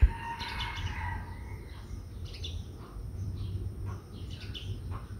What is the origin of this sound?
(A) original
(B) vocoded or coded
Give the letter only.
A